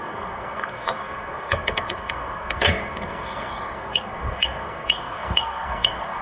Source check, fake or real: fake